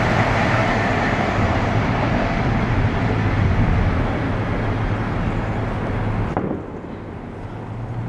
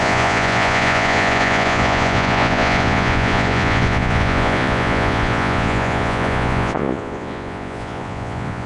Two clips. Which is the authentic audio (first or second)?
first